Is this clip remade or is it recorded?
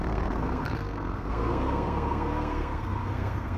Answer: remade